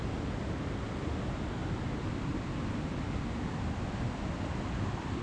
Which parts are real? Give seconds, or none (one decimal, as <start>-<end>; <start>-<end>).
0.0-5.2